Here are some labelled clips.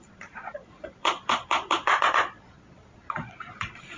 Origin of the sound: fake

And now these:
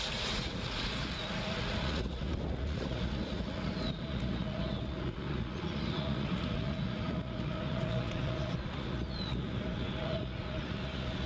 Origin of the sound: fake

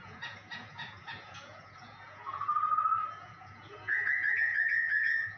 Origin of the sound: fake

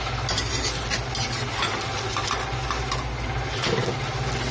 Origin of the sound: real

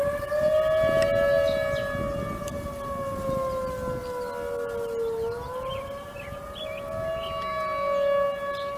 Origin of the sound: real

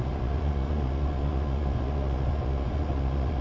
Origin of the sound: fake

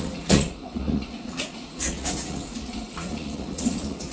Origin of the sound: fake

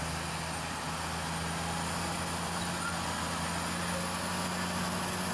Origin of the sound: real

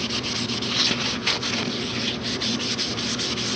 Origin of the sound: real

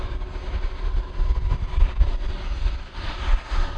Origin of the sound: real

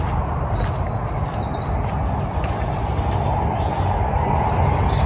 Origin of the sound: real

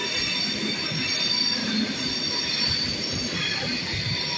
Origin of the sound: real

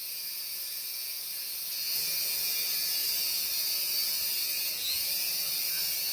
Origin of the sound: fake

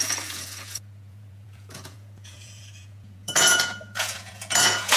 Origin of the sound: fake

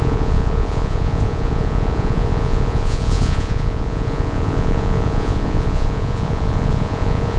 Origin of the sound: fake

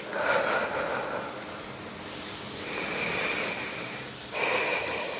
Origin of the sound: real